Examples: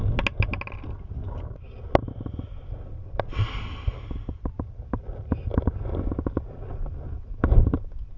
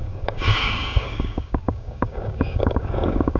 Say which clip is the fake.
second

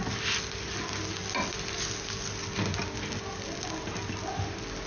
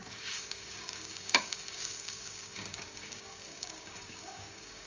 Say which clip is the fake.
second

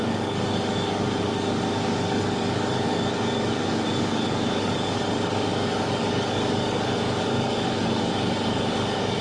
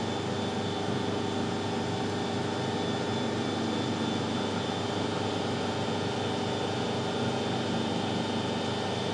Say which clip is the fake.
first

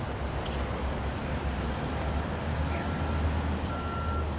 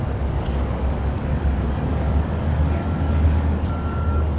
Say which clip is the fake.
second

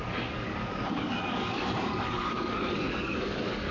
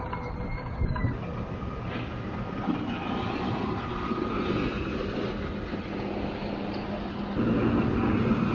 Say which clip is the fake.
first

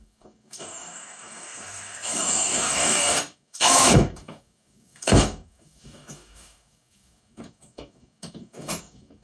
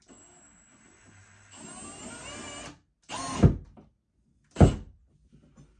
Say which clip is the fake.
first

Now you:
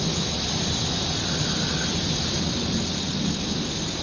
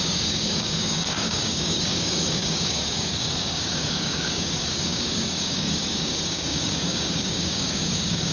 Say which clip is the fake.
second